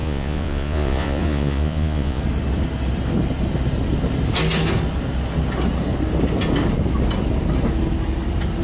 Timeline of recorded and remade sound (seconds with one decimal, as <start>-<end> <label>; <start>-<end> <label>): 0.0-2.2 remade; 2.2-8.6 recorded